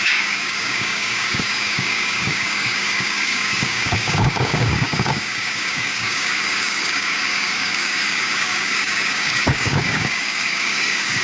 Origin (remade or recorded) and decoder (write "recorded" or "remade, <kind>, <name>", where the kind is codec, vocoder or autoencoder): remade, codec, DAC